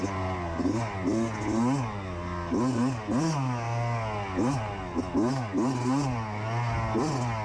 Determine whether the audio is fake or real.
real